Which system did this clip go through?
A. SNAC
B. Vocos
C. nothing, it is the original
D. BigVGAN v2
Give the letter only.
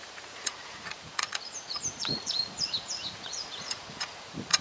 B